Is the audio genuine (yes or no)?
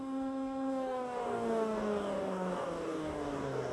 no